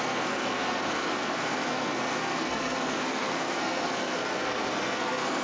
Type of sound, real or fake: fake